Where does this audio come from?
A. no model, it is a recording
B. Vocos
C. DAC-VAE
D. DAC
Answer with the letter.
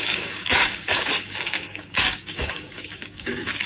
D